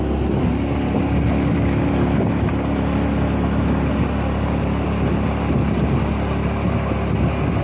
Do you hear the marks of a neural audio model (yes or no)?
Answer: no